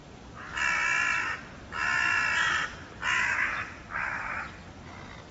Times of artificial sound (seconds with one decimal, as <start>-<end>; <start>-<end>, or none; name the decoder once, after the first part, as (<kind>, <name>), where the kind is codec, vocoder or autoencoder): none